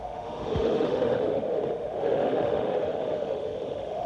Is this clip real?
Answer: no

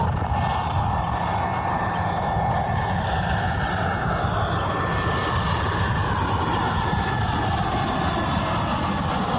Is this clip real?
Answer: yes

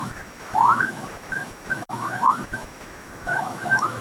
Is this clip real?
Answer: no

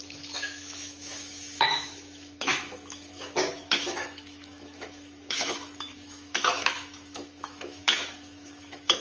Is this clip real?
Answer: no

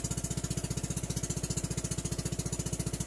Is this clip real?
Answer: yes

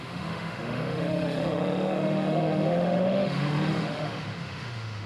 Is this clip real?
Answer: no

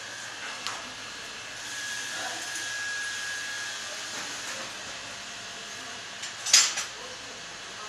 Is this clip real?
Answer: yes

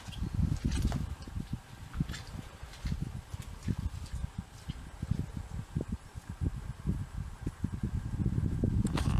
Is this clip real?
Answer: yes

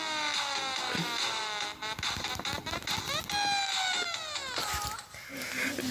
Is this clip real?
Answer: yes